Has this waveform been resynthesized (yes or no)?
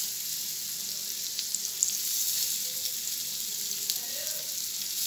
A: no